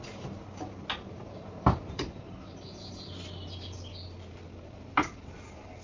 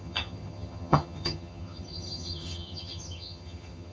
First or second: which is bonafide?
first